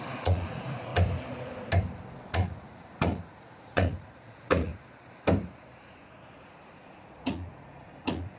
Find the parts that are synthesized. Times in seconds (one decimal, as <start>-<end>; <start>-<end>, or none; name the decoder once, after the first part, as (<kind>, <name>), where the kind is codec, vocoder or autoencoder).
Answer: 0.0-0.9 (vocoder, Vocos); 2.3-4.7; 5.8-8.4